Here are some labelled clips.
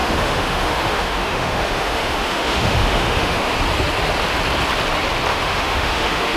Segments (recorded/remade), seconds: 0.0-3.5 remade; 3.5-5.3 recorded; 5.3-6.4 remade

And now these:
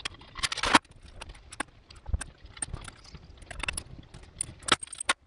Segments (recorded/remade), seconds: 0.0-5.3 recorded

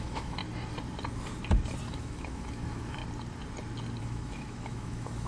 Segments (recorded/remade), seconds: 0.0-0.4 remade; 0.4-1.9 recorded; 1.9-3.0 remade; 3.0-4.0 recorded; 4.0-5.3 remade

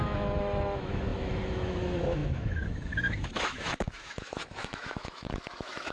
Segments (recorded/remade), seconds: 0.0-5.9 remade

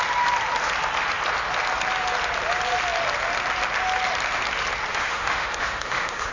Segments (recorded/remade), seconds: 0.0-4.9 recorded; 4.9-6.3 remade

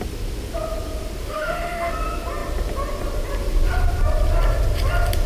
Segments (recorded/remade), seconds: 0.0-1.2 recorded; 1.2-1.9 remade; 1.9-5.3 recorded

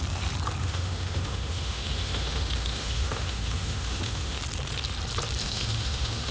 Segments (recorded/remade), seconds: 0.0-0.6 recorded; 0.6-4.4 remade; 4.4-5.4 recorded; 5.4-6.3 remade